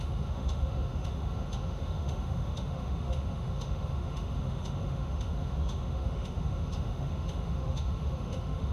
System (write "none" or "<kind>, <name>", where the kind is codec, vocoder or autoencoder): autoencoder, DAC-VAE